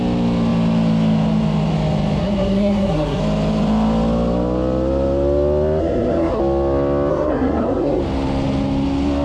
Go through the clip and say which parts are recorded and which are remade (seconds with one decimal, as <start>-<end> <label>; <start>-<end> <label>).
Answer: 0.0-2.2 recorded; 2.2-3.2 remade; 3.2-5.8 recorded; 5.8-6.4 remade; 6.4-7.1 recorded; 7.1-8.0 remade; 8.0-9.2 recorded